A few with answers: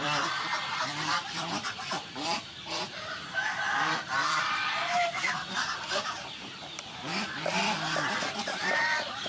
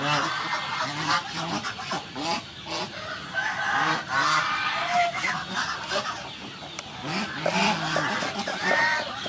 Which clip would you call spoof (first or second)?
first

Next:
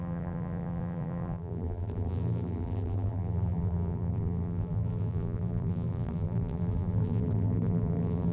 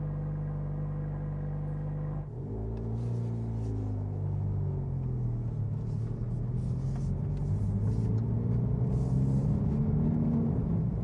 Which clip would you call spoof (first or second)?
first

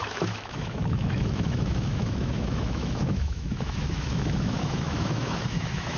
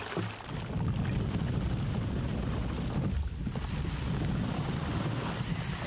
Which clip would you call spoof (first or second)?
first